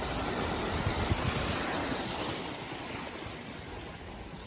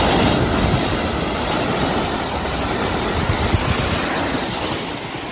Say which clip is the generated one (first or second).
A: second